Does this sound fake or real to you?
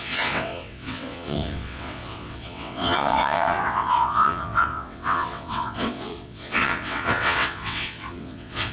fake